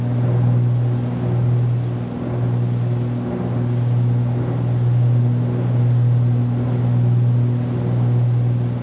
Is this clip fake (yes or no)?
no